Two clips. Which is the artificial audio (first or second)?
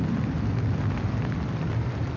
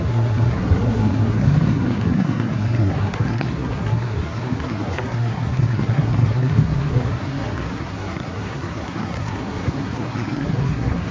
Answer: second